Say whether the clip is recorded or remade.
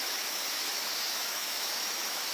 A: remade